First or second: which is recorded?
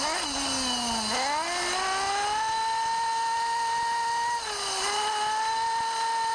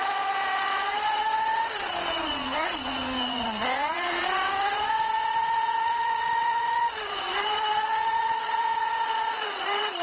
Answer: first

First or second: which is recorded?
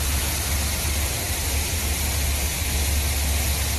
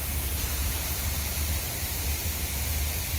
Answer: first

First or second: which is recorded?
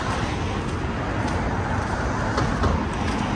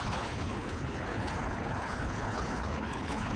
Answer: first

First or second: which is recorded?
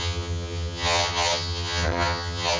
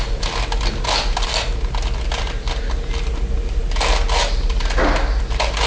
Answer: second